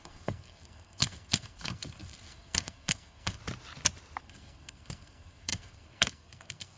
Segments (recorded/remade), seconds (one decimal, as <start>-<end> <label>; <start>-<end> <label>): 0.0-3.4 remade; 3.4-4.2 recorded; 4.2-6.8 remade